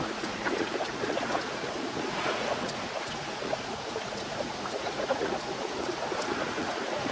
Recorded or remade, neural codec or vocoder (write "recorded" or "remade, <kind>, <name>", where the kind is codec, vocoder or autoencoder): remade, vocoder, Vocos